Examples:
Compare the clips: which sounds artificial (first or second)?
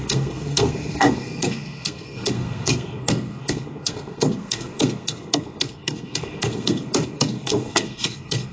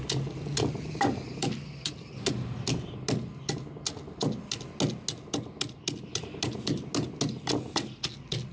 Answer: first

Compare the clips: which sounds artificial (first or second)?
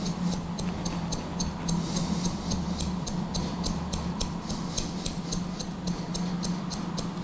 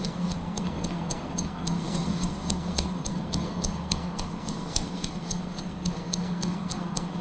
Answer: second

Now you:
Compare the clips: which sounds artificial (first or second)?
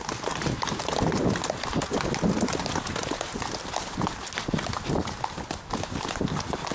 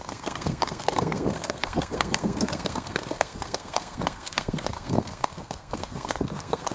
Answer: second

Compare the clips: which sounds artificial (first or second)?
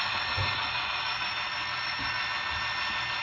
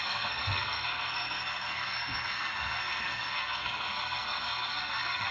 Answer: second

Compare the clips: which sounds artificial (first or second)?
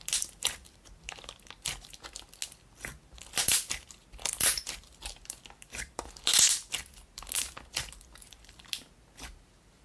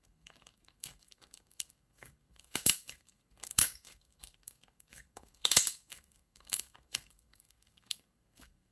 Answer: second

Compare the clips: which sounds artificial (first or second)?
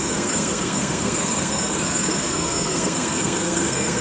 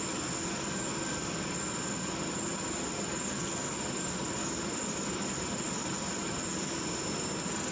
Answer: first